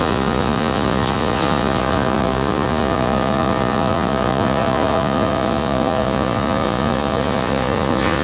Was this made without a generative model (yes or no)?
no